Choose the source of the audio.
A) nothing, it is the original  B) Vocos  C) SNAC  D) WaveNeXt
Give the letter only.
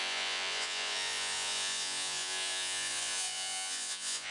B